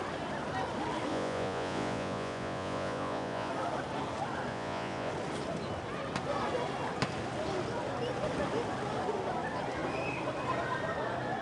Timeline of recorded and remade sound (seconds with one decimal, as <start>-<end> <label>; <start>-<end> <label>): 0.0-1.1 recorded; 1.1-3.5 remade; 3.5-4.5 recorded; 4.5-5.1 remade; 5.1-11.4 recorded